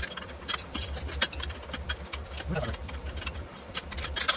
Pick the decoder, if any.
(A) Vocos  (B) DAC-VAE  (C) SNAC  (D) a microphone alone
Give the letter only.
D